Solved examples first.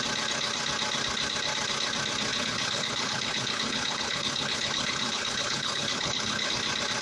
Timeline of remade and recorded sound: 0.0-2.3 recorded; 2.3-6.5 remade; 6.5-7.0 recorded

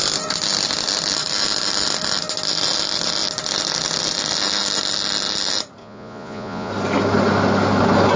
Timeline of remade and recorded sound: 0.0-5.8 recorded; 5.8-6.7 remade; 6.7-8.2 recorded

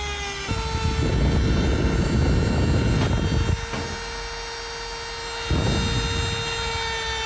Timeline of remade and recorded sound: 0.0-7.3 recorded